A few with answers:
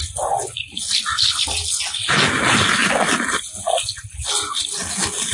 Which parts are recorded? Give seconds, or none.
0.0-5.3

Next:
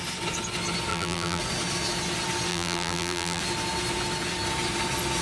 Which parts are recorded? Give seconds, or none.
0.0-0.9; 1.4-2.5; 3.4-5.2

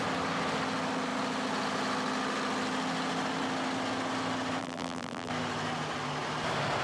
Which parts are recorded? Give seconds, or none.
0.0-4.6; 5.3-6.8

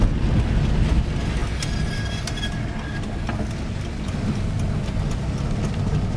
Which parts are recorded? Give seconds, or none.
0.0-6.2

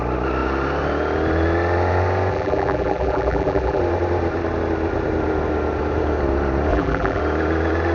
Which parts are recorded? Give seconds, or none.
0.0-2.3; 3.8-6.7; 7.2-7.9